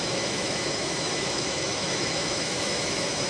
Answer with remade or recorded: remade